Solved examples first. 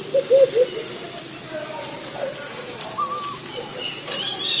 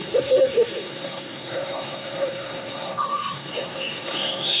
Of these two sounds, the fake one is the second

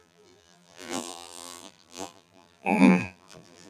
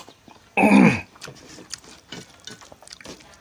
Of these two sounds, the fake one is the first